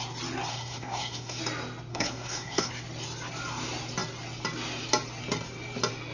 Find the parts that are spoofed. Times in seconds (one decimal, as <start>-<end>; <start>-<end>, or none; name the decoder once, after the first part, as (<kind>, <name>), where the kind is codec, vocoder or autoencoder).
0.5-1.4 (codec, SNAC); 1.9-2.7